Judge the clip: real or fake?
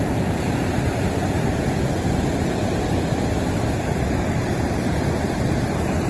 fake